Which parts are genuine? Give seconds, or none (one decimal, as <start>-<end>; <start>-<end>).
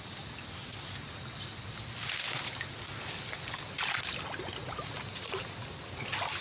0.0-6.4